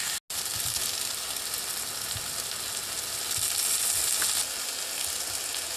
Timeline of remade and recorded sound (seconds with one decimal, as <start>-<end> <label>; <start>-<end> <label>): 0.0-5.8 recorded